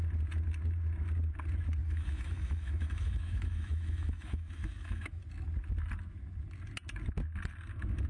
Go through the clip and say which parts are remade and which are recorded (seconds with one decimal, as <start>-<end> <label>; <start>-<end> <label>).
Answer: 0.0-1.8 recorded; 1.8-5.2 remade; 5.2-8.1 recorded